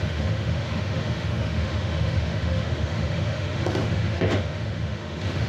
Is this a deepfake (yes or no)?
yes